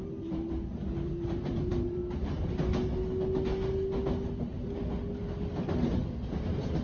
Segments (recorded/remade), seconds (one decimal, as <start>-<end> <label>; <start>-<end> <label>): 0.0-2.0 remade; 2.0-6.1 recorded; 6.1-6.8 remade

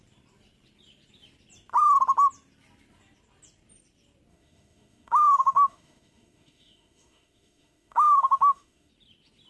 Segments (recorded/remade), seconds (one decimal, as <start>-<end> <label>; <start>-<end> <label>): 0.0-4.3 recorded; 4.3-8.9 remade; 8.9-9.5 recorded